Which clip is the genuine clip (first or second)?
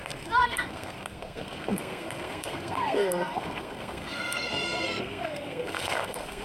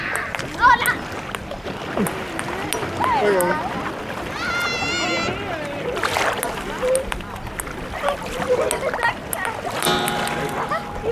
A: second